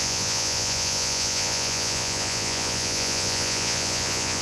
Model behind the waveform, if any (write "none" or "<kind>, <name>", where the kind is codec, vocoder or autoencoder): vocoder, Vocos